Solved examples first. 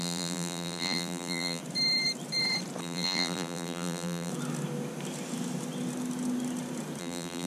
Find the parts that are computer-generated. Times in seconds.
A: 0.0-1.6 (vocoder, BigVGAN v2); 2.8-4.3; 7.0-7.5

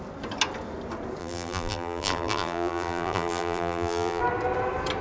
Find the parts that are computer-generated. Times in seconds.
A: 1.2-4.2 (vocoder, BigVGAN v2)